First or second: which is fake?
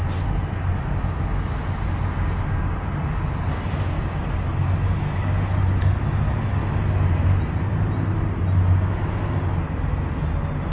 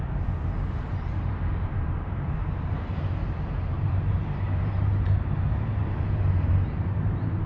second